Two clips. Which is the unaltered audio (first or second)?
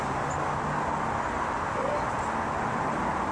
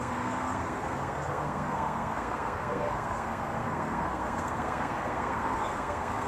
first